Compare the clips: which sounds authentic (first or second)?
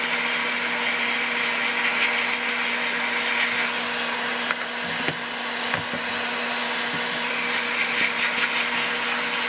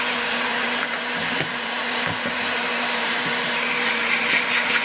first